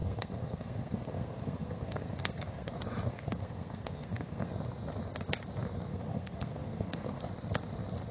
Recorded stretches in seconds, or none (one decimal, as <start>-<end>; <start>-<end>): 2.7-3.1; 4.5-5.9; 7.2-8.1